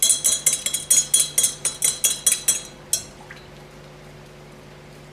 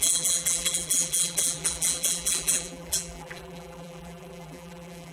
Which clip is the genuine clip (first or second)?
first